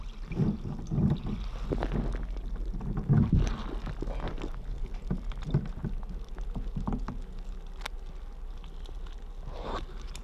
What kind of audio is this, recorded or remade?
recorded